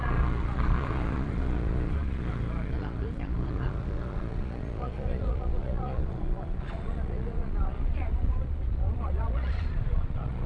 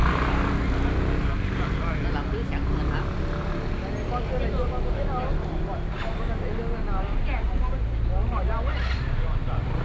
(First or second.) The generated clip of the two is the first